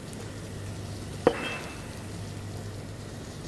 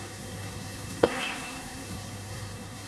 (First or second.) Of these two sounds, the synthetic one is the second